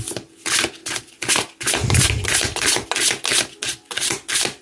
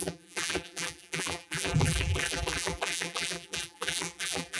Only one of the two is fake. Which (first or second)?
second